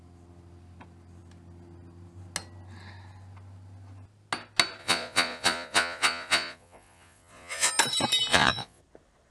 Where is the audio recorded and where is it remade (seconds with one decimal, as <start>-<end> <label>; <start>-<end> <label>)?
0.0-4.8 recorded; 4.8-7.7 remade; 7.7-8.3 recorded; 8.3-8.8 remade; 8.8-9.3 recorded

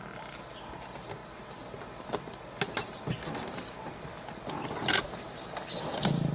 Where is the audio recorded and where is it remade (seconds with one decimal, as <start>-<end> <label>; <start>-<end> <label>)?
0.0-6.3 recorded

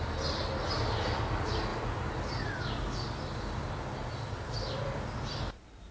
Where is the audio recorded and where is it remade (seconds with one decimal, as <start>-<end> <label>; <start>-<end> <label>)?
0.0-5.9 recorded

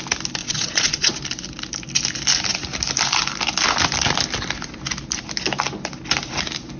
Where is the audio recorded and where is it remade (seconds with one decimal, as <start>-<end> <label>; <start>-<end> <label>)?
0.0-0.4 recorded; 0.4-1.1 remade; 1.1-6.8 recorded

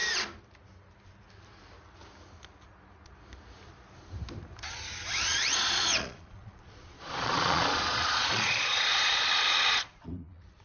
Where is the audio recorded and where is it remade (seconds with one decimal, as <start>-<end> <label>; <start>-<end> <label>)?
0.0-5.2 recorded; 5.2-10.6 remade

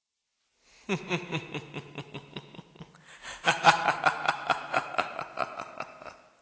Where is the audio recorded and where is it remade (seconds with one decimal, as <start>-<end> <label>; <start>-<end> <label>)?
0.0-4.7 recorded; 4.7-5.6 remade; 5.6-6.4 recorded

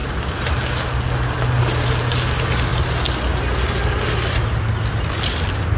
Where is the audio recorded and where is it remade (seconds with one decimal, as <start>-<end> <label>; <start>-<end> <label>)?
0.0-5.8 recorded